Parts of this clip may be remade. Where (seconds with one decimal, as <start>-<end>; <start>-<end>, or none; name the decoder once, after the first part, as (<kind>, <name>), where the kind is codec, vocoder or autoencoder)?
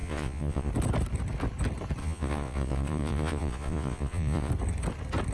0.0-0.7 (vocoder, Vocos); 2.0-4.5